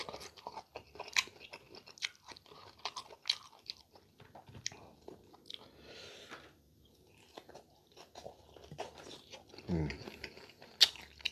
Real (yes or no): yes